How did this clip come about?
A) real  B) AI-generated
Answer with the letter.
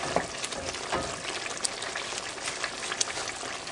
A